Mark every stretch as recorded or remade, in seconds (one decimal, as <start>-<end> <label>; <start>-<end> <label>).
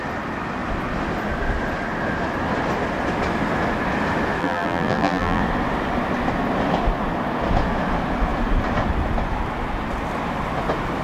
0.0-4.4 recorded; 4.4-5.4 remade; 5.4-11.0 recorded